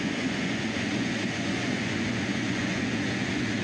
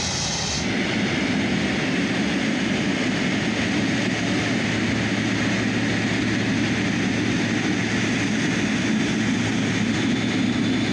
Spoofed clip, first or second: first